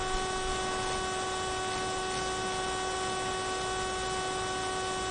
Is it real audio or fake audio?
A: real